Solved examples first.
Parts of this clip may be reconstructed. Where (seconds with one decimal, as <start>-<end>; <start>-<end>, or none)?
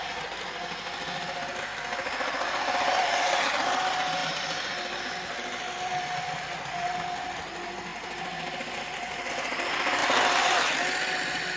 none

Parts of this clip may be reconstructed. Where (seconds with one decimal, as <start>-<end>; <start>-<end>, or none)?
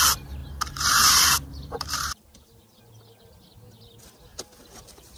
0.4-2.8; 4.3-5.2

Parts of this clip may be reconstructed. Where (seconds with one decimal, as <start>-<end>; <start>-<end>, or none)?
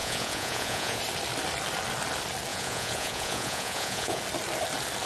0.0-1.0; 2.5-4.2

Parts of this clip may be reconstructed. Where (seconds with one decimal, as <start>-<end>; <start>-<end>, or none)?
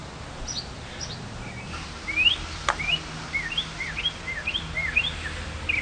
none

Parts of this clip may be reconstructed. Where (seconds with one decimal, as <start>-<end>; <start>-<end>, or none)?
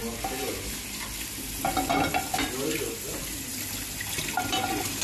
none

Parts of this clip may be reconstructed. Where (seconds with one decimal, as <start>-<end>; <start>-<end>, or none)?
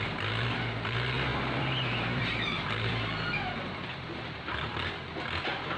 1.3-4.8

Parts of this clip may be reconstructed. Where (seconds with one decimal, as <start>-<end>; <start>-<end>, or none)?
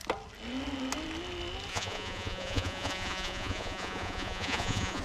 1.7-5.0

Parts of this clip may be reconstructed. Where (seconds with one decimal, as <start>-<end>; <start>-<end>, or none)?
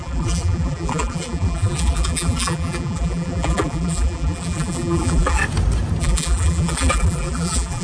0.0-5.4; 6.0-7.8